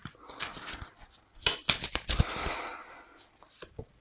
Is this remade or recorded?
recorded